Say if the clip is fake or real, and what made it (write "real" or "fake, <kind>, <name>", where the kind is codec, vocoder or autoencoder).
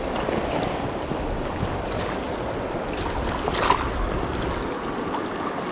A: real